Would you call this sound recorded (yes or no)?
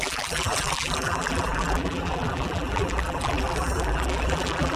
no